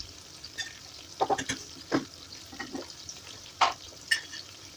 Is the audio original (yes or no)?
yes